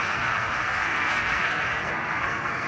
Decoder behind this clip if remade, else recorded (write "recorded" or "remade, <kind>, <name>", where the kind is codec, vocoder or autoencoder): remade, codec, SNAC